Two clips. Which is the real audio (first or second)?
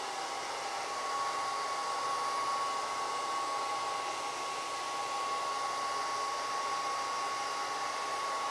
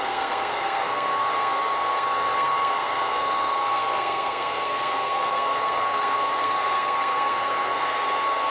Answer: first